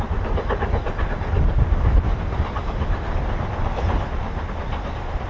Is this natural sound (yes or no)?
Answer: yes